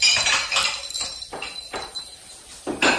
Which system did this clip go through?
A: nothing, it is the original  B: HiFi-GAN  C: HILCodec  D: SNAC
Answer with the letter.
A